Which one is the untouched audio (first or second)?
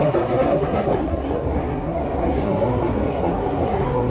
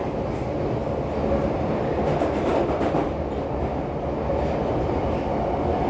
second